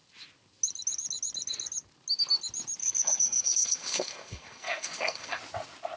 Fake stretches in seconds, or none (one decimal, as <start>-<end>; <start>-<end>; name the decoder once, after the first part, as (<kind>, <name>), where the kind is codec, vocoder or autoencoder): 2.8-5.4 (codec, SNAC)